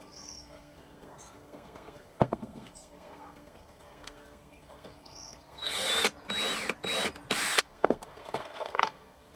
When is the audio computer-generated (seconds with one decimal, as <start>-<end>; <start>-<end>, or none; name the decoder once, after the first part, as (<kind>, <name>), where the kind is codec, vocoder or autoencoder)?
0.0-5.9 (codec, SNAC); 7.6-9.4